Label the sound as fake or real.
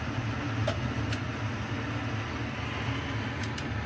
real